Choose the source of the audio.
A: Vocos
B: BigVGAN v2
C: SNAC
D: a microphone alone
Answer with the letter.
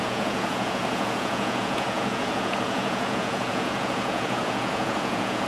A